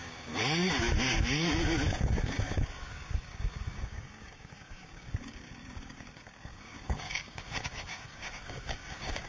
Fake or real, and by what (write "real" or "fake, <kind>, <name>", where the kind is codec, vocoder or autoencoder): fake, codec, DAC